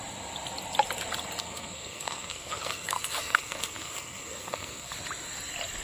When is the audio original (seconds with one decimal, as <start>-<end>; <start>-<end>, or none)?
0.0-1.4; 4.9-5.8